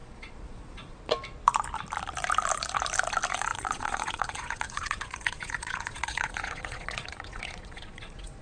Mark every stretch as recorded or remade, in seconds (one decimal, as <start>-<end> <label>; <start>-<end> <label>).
0.0-1.0 remade; 1.0-3.5 recorded; 3.5-8.4 remade